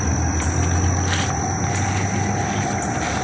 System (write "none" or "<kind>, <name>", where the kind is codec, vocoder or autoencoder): none